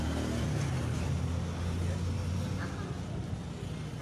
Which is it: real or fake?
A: real